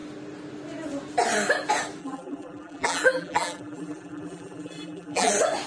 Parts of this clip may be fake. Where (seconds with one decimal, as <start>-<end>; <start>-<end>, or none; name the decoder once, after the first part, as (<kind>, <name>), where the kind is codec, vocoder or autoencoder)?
2.0-5.3 (vocoder, BigVGAN v2)